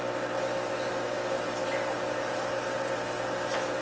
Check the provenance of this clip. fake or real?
fake